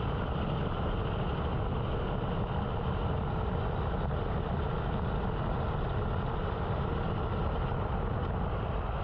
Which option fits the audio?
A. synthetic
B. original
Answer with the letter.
B